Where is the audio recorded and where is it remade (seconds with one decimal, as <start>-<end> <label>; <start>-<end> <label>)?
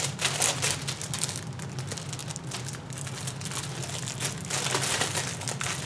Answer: 0.0-5.9 recorded